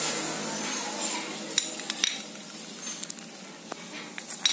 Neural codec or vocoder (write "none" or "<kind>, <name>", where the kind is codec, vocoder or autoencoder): none